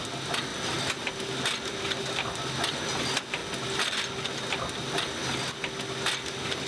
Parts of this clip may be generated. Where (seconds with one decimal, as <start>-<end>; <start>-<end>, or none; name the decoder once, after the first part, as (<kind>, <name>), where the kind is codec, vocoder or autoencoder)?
0.5-1.2 (vocoder, BigVGAN v2)